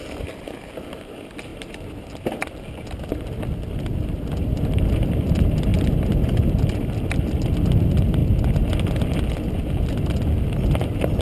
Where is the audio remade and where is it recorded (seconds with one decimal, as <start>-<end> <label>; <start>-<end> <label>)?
0.0-1.5 recorded; 1.5-2.1 remade; 2.1-11.2 recorded